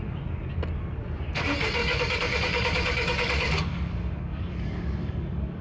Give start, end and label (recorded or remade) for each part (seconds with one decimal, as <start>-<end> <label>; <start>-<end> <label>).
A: 0.0-1.8 recorded; 1.8-5.6 remade